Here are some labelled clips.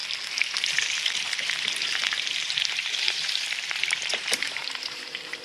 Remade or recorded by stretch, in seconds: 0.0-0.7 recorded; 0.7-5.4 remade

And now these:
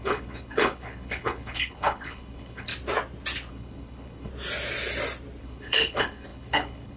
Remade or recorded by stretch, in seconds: 0.0-2.7 remade; 2.7-3.5 recorded; 3.5-4.3 remade; 4.3-5.4 recorded; 5.4-7.0 remade

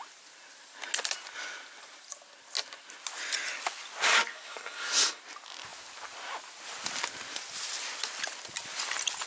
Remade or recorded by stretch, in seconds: 0.0-4.3 recorded; 4.3-5.2 remade; 5.2-9.3 recorded

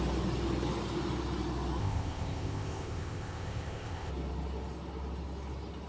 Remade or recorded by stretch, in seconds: 0.0-1.8 recorded; 1.8-4.1 remade; 4.1-5.9 recorded